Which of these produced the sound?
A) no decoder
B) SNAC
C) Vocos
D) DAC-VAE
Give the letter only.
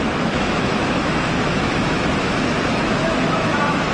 D